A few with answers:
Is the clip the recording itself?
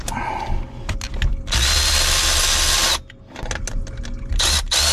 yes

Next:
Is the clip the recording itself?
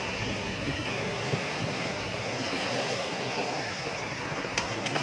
no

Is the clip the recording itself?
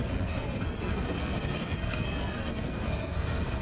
no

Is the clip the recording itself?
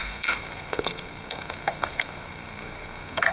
no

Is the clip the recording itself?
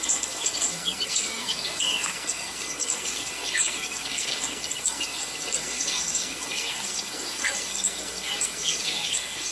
no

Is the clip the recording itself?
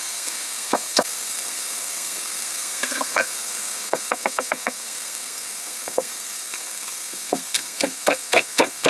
no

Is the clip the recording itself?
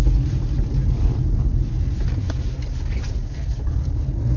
yes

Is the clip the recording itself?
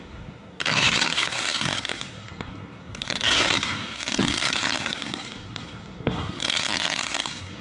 no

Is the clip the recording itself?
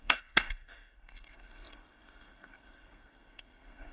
no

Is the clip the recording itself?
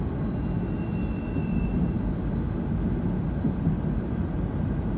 yes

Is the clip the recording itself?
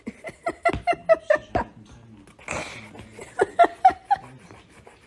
yes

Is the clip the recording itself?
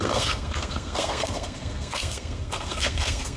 no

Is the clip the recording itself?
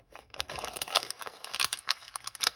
no